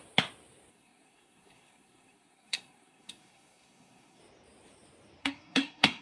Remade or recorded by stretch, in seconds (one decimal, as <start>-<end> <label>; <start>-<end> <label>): 0.0-0.7 recorded; 0.7-4.2 remade; 4.2-5.2 recorded; 5.2-6.0 remade